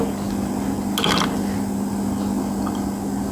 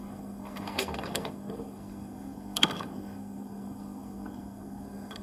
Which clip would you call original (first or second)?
first